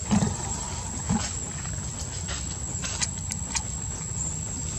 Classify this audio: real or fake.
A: real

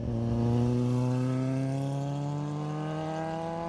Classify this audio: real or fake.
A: real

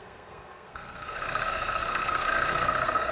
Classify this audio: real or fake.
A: fake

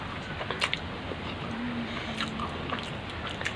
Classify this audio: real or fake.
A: real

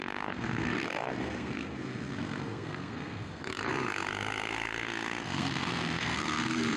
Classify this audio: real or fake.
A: fake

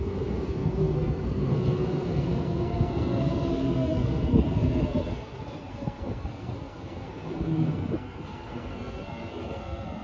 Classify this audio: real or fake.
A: fake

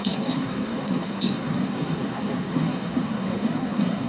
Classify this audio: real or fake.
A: fake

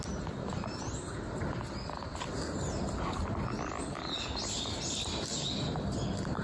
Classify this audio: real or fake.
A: real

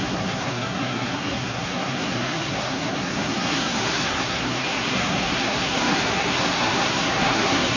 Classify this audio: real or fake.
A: fake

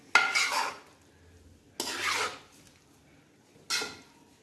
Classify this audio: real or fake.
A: real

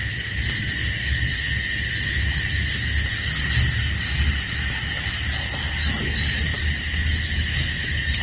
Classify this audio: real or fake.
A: real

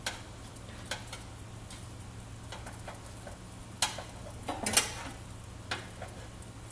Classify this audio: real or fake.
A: real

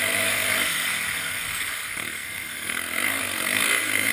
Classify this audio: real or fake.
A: fake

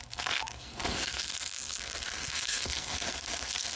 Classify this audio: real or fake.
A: fake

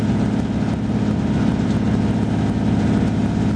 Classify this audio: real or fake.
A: real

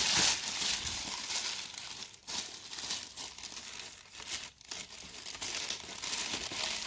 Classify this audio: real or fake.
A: real